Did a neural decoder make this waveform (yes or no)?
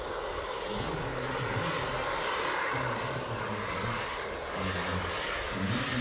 yes